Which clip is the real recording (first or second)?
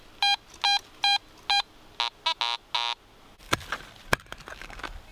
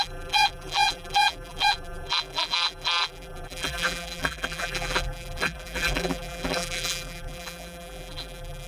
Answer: first